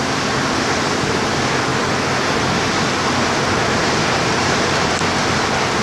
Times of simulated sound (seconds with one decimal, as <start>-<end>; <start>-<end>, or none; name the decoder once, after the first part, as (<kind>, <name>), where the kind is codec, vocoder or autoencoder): none